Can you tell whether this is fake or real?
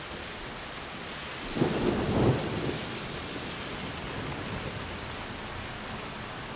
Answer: real